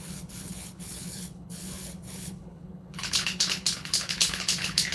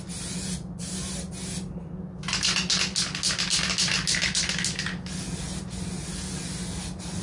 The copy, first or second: first